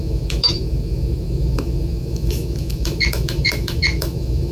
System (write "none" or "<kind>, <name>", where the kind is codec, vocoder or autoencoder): autoencoder, DAC-VAE